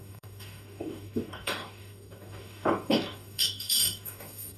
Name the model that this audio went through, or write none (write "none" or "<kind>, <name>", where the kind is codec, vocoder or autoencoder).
codec, DAC